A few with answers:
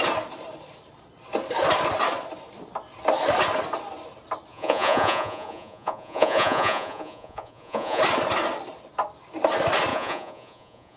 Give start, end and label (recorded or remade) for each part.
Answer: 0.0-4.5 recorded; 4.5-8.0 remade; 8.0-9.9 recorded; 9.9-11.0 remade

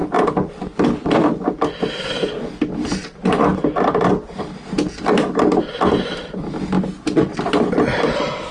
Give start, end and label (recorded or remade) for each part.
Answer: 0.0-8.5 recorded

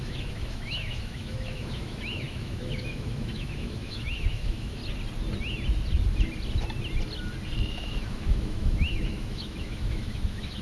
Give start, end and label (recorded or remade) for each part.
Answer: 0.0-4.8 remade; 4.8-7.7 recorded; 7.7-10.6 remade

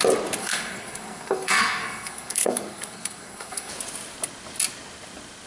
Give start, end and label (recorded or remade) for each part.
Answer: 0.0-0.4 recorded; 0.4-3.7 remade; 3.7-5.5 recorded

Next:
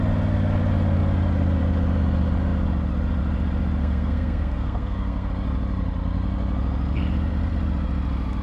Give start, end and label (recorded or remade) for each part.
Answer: 0.0-3.8 recorded; 3.8-5.3 remade; 5.3-8.4 recorded

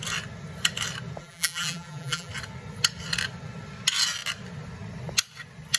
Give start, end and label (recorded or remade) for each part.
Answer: 0.0-1.2 recorded; 1.2-2.3 remade; 2.3-5.8 recorded

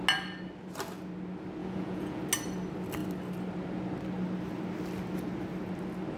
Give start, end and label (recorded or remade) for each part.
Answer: 0.0-1.6 recorded; 1.6-2.2 remade; 2.2-6.2 recorded